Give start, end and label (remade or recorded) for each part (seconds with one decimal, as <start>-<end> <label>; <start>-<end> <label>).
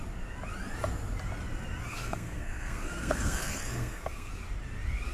0.0-1.9 recorded; 1.9-4.3 remade; 4.3-5.1 recorded